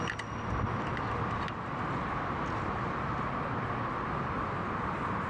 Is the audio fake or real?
real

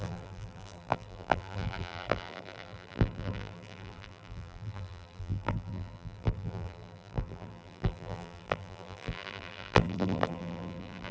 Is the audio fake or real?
fake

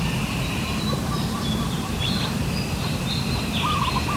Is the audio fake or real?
fake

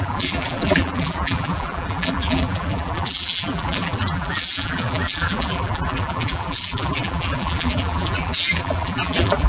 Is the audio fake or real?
fake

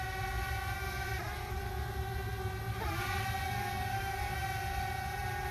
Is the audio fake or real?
fake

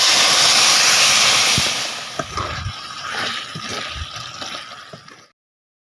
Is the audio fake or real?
real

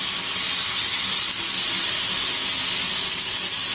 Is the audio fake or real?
real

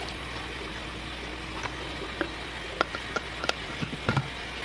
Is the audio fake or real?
real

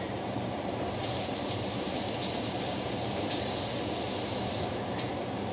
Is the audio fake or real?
fake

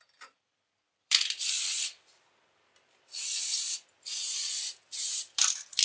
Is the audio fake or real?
fake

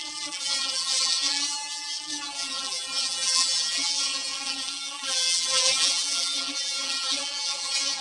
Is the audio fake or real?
fake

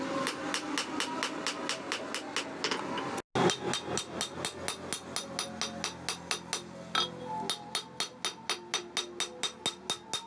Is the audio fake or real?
real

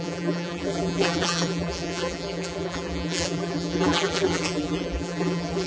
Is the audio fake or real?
fake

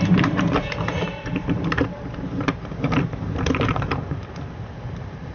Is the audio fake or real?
fake